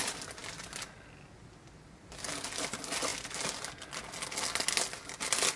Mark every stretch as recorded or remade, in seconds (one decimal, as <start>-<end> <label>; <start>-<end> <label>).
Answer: 0.0-5.6 recorded